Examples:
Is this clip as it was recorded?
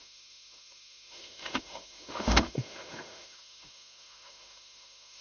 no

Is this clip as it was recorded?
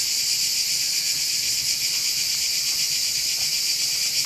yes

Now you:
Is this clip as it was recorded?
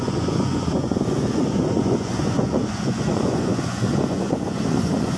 no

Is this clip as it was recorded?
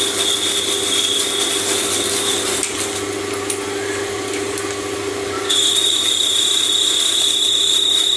yes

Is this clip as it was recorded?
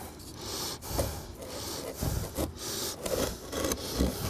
yes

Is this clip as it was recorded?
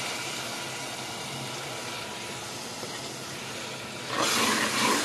yes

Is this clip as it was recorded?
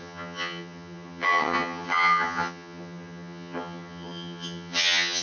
no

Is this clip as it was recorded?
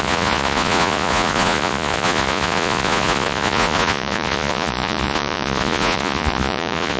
no